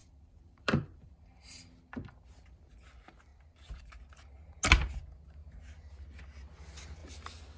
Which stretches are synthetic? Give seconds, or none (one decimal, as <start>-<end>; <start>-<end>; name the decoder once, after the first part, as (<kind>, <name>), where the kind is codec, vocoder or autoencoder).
0.0-1.6 (vocoder, BigVGAN v2); 3.3-3.9